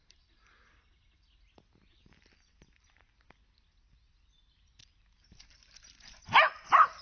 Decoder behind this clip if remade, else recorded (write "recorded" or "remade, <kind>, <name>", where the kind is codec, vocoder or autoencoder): recorded